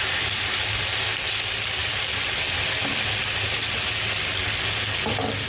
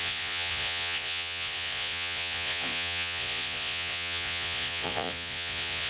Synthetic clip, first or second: second